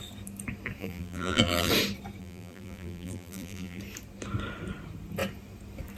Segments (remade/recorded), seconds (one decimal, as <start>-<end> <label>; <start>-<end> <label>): 0.0-0.8 recorded; 0.8-1.7 remade; 1.7-2.2 recorded; 2.2-3.8 remade; 3.8-6.0 recorded

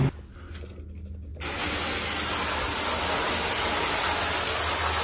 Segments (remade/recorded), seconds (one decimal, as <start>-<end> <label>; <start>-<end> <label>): 0.0-5.0 recorded

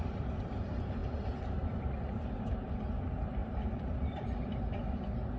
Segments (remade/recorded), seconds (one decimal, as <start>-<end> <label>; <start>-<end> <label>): 0.0-1.0 remade; 1.0-2.4 recorded; 2.4-5.4 remade

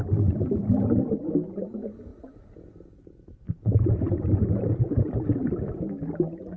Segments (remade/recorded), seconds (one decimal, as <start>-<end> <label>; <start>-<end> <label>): 0.0-2.1 recorded; 2.1-5.5 remade; 5.5-6.6 recorded

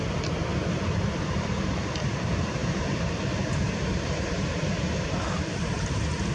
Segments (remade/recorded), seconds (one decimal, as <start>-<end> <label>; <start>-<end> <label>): 0.0-6.3 remade

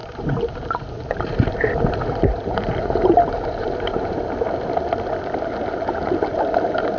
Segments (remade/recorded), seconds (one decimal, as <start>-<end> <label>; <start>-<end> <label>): 0.0-4.2 remade; 4.2-7.0 recorded

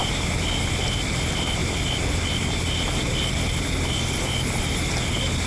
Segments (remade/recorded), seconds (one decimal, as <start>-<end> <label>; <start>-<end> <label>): 0.0-5.5 recorded